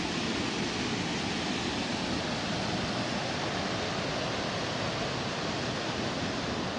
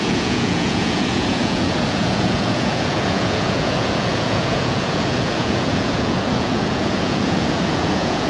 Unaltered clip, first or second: first